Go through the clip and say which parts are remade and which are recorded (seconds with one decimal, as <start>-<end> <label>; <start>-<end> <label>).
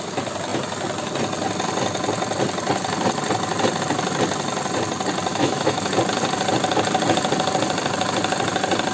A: 0.0-5.3 recorded; 5.3-5.9 remade; 5.9-8.9 recorded